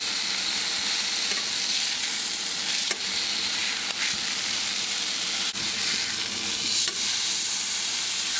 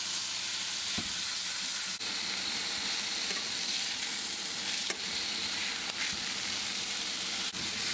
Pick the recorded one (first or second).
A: first